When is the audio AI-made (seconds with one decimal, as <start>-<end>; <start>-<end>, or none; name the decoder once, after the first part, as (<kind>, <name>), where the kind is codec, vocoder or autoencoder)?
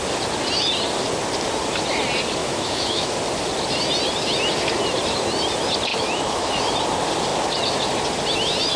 2.4-3.1 (autoencoder, DAC-VAE); 5.9-6.5